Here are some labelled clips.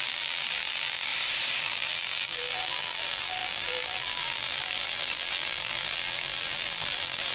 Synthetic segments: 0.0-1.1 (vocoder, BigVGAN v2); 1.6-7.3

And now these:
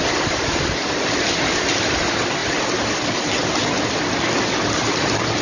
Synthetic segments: none

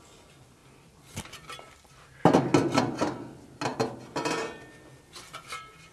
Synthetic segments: 0.6-2.0 (vocoder, BigVGAN v2); 3.7-4.2

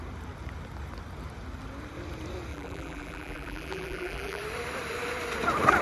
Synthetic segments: 2.5-4.4 (vocoder, BigVGAN v2)